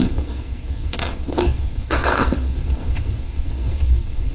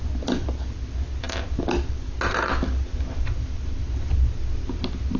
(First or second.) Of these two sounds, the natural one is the second